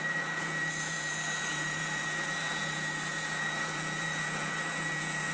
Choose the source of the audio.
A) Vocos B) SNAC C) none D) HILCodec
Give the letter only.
A